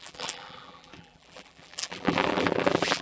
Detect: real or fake fake